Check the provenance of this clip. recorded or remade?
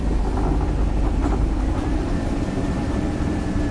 remade